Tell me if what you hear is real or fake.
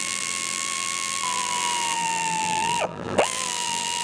fake